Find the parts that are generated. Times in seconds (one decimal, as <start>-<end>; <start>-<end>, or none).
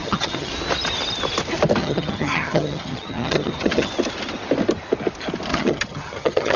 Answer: 0.0-0.5; 1.8-3.9; 5.5-6.6